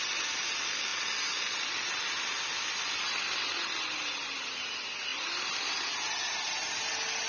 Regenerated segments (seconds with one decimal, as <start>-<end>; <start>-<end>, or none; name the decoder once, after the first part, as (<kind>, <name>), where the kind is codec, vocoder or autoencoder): none